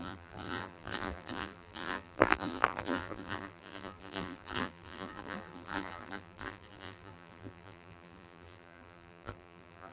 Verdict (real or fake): fake